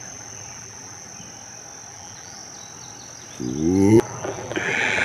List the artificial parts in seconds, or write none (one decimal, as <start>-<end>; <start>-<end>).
0.0-1.1; 1.9-2.4; 3.9-5.0